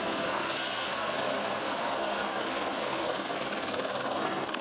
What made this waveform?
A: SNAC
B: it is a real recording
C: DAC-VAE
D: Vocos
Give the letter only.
A